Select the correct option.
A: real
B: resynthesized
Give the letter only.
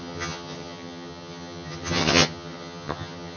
B